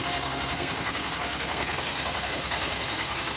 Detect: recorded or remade remade